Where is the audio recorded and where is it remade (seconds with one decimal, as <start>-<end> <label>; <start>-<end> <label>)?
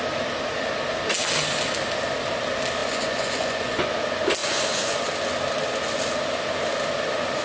0.0-2.8 recorded; 2.8-3.9 remade; 3.9-4.4 recorded; 4.4-5.1 remade; 5.1-7.4 recorded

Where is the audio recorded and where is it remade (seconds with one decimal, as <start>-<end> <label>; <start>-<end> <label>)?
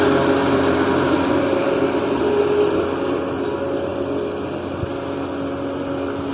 0.0-0.4 recorded; 0.4-2.3 remade; 2.3-6.3 recorded